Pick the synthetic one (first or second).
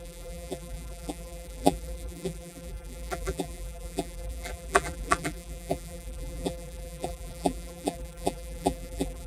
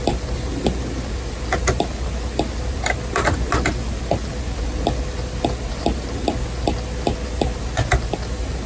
first